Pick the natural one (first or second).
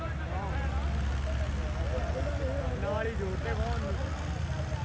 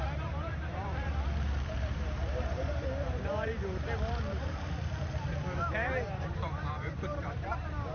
first